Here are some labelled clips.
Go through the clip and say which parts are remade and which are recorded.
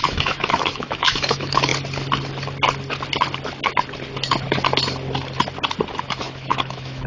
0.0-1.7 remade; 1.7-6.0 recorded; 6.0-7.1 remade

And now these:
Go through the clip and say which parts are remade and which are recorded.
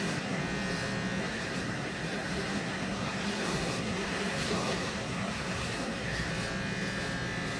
0.0-0.4 remade; 0.4-1.2 recorded; 1.2-6.3 remade; 6.3-7.6 recorded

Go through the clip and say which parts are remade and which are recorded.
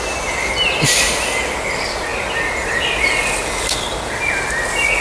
0.0-5.0 recorded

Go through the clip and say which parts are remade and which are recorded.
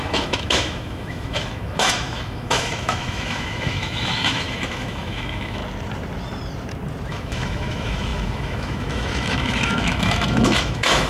0.0-5.6 remade; 5.6-7.1 recorded; 7.1-11.1 remade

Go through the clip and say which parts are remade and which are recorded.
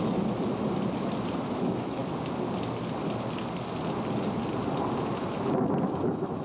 0.0-0.6 remade; 0.6-1.5 recorded; 1.5-2.0 remade; 2.0-5.8 recorded; 5.8-6.4 remade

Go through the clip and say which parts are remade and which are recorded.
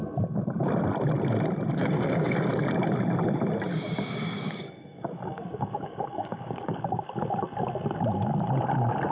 0.0-1.8 recorded; 1.8-2.5 remade; 2.5-3.7 recorded; 3.7-6.8 remade; 6.8-9.1 recorded